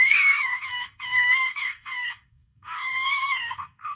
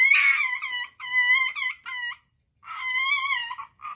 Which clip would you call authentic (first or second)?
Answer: second